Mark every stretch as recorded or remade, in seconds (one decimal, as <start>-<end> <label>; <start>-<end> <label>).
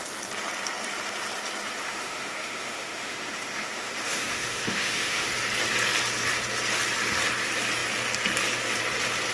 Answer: 0.0-1.8 recorded; 1.8-5.3 remade; 5.3-9.3 recorded